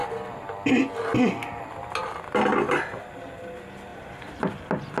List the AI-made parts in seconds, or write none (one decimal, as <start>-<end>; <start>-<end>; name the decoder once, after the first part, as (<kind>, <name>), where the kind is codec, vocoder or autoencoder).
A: none